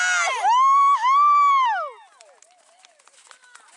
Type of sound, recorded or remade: recorded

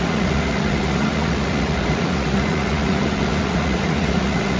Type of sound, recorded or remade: remade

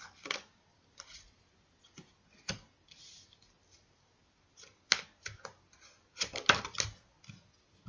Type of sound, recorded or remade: recorded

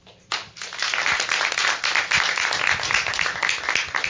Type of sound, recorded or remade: recorded